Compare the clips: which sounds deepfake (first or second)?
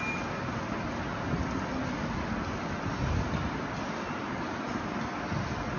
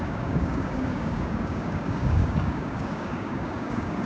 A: second